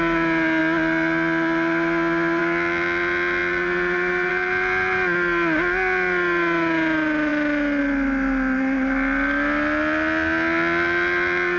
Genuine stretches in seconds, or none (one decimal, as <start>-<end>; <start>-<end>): 0.0-11.6